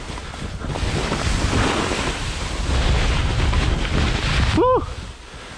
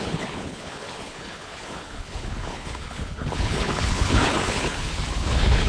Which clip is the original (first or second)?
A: first